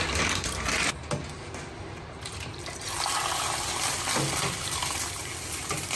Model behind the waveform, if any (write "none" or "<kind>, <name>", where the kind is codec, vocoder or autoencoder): none